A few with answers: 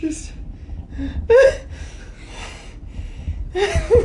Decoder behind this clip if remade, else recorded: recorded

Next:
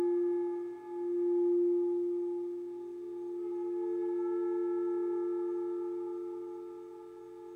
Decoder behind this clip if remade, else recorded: recorded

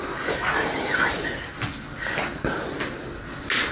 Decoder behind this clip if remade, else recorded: recorded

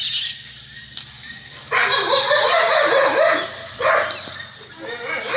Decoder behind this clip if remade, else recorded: recorded